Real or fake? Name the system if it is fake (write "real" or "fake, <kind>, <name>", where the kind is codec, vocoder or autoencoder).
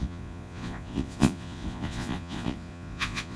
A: fake, vocoder, Vocos